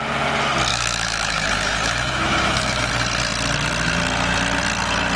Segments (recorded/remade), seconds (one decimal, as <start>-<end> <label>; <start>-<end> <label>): 0.0-0.7 recorded; 0.7-2.9 remade; 2.9-5.2 recorded